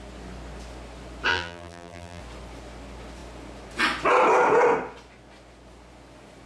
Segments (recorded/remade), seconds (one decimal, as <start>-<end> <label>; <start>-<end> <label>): 0.0-1.3 recorded; 1.3-2.2 remade; 2.2-6.5 recorded

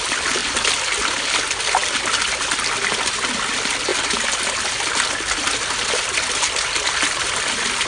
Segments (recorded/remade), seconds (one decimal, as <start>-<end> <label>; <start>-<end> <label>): 0.0-7.9 recorded

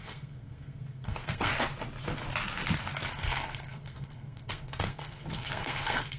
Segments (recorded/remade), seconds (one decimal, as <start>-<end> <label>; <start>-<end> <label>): 0.0-1.5 remade; 1.5-3.1 recorded; 3.1-6.2 remade

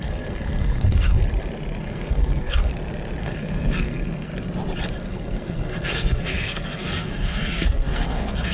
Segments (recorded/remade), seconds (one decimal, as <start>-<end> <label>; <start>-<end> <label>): 0.0-1.2 remade; 1.2-1.8 recorded; 1.8-2.7 remade; 2.7-3.2 recorded; 3.2-4.3 remade; 4.3-5.1 recorded; 5.1-8.5 remade

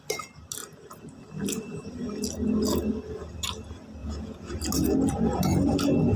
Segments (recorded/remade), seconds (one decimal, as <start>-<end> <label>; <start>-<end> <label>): 0.0-4.0 recorded; 4.0-4.5 remade; 4.5-6.2 recorded

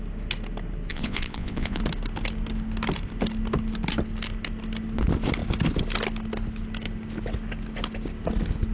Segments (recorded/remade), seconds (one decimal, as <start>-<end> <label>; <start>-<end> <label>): 0.0-0.9 recorded; 0.9-1.8 remade; 1.8-8.7 recorded

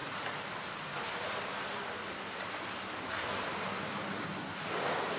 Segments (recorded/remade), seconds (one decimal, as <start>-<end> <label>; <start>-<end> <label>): 0.0-5.2 recorded